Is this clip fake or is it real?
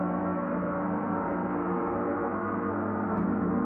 fake